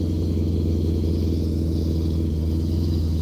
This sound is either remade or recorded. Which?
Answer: remade